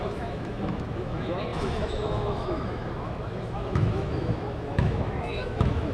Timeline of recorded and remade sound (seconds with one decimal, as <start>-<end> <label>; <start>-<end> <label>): 0.0-5.9 remade